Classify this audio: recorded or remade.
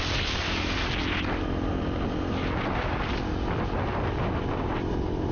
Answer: recorded